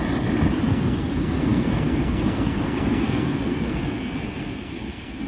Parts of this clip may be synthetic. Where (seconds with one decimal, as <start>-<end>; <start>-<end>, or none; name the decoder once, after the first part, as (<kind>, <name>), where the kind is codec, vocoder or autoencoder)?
0.7-5.3 (codec, SNAC)

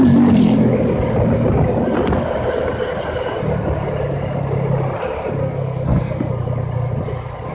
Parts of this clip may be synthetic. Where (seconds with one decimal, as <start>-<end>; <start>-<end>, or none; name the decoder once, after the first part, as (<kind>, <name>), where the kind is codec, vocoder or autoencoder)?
5.4-6.3 (codec, SNAC)

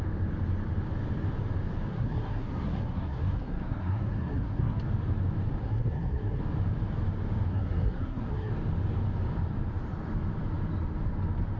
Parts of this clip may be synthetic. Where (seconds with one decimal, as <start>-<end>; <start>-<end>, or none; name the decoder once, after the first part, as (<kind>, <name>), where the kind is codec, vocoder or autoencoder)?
1.9-4.8 (codec, SNAC); 5.6-6.4; 7.5-8.5

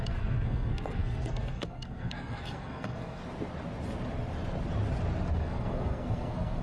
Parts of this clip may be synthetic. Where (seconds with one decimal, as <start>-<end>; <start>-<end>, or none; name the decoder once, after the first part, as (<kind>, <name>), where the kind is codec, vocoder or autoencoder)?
0.0-3.2 (codec, SNAC); 5.4-6.6

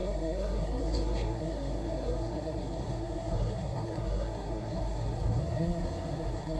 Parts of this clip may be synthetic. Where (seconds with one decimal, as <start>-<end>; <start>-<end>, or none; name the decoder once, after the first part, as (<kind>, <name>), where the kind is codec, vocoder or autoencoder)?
0.0-6.6 (codec, SNAC)